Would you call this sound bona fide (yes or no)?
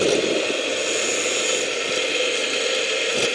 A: yes